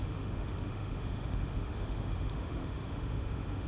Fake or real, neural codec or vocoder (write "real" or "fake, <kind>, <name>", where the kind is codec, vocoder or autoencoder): fake, autoencoder, DAC-VAE